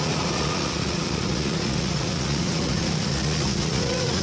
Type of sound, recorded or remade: remade